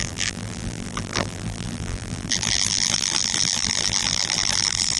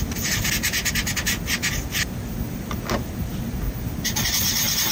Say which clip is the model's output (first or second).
first